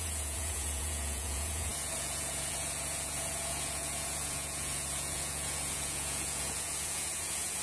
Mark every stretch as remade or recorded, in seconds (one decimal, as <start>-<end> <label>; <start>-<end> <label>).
0.0-7.6 remade